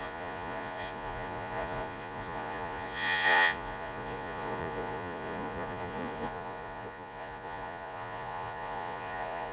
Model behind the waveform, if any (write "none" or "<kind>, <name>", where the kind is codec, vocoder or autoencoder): vocoder, Vocos